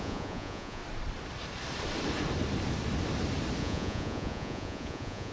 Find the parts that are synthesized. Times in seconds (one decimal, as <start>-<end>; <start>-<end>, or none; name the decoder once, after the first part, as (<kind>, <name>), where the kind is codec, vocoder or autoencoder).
0.0-0.8 (vocoder, Vocos); 3.6-5.3